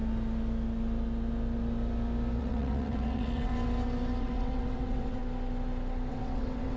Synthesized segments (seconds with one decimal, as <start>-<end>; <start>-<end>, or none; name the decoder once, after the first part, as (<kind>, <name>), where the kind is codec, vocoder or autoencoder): 2.4-3.5 (vocoder, WaveNeXt); 4.2-5.2; 6.1-6.8